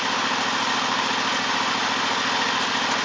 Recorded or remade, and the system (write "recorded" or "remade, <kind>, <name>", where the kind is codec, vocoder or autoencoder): recorded